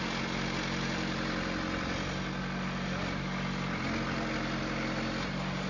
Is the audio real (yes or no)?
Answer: yes